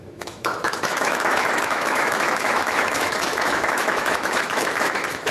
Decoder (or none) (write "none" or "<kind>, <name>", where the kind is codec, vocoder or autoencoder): autoencoder, DAC-VAE